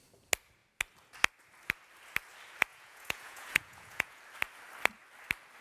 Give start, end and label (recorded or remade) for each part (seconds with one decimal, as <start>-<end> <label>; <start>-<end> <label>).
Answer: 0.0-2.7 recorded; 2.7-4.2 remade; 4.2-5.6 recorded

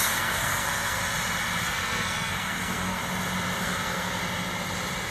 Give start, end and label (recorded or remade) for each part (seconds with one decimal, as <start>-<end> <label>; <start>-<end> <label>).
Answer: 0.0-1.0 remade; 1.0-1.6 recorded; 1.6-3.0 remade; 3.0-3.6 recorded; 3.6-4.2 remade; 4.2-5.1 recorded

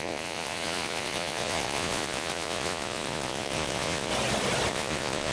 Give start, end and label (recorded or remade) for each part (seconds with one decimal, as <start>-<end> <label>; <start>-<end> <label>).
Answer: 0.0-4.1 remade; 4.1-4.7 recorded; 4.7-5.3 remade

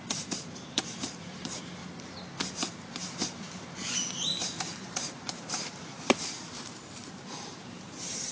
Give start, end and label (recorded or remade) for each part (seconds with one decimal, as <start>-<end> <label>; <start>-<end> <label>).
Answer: 0.0-1.8 remade; 1.8-2.5 recorded; 2.5-8.3 remade